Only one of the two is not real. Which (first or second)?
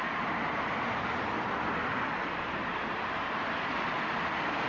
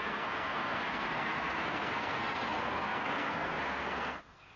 second